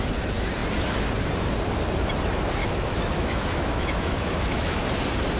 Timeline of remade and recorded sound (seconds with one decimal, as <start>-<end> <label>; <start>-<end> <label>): 0.0-2.6 recorded; 2.6-4.8 remade; 4.8-5.4 recorded